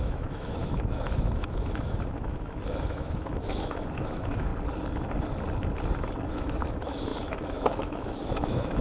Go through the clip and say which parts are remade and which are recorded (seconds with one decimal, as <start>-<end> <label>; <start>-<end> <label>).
0.0-4.5 remade; 4.5-6.3 recorded; 6.3-8.8 remade